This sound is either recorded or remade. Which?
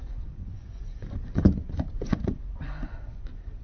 remade